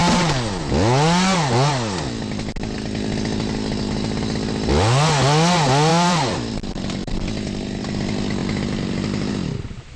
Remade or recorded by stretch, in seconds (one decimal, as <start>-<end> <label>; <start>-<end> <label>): 0.0-5.9 recorded; 5.9-7.1 remade; 7.1-8.4 recorded; 8.4-9.3 remade; 9.3-10.0 recorded